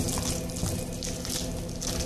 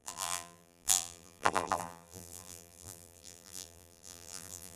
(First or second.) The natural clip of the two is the first